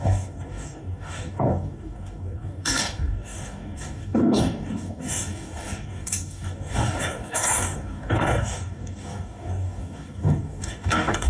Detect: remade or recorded remade